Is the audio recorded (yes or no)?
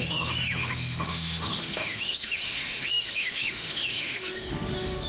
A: no